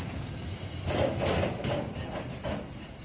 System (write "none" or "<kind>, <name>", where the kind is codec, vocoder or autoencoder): none